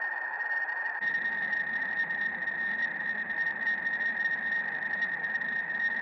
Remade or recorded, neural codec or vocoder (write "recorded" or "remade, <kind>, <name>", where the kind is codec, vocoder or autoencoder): remade, vocoder, BigVGAN v2